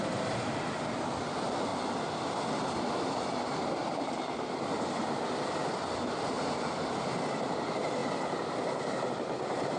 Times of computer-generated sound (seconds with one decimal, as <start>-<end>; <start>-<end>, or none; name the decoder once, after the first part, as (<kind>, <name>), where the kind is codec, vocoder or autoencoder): 1.7-2.5 (vocoder, BigVGAN v2)